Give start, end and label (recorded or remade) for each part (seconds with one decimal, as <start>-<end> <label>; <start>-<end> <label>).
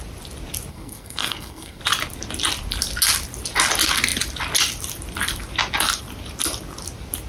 0.0-0.7 recorded; 0.7-1.8 remade; 1.8-7.3 recorded